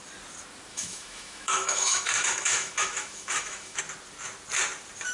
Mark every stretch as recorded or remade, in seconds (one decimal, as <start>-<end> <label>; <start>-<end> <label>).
0.0-0.7 recorded; 0.7-3.8 remade; 3.8-5.1 recorded